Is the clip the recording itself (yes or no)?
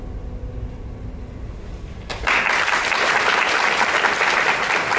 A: yes